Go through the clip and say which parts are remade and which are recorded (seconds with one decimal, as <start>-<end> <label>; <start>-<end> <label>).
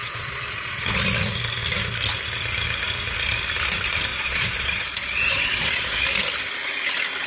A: 0.0-1.0 remade; 1.0-4.1 recorded; 4.1-6.0 remade; 6.0-7.3 recorded